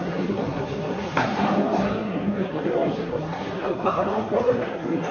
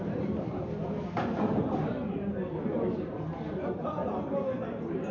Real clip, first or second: second